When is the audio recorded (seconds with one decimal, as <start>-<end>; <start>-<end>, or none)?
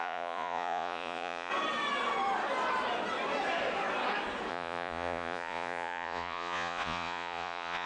1.5-4.5